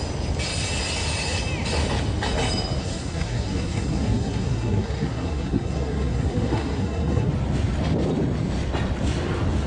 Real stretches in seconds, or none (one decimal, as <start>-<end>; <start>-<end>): 0.0-2.8; 7.3-9.7